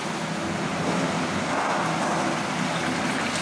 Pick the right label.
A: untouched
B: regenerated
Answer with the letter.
A